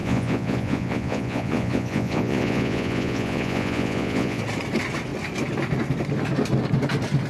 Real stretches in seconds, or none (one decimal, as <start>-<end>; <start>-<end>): 4.4-7.3